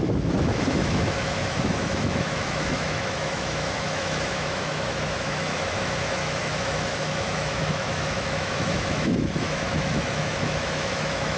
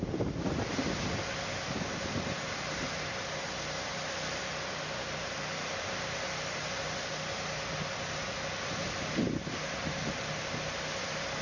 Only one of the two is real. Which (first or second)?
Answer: second